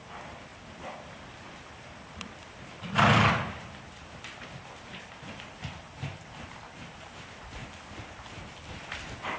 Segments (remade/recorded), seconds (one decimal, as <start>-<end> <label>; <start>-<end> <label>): 0.0-9.4 recorded